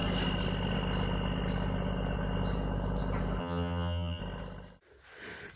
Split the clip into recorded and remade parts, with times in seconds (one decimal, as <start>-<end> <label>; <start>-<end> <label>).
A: 0.0-3.4 recorded; 3.4-4.2 remade; 4.2-5.6 recorded